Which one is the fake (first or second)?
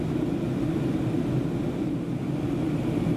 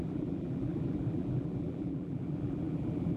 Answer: second